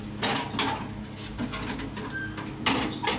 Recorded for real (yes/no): yes